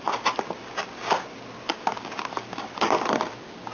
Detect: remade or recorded recorded